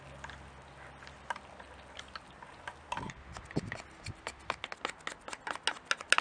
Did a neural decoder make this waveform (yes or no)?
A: no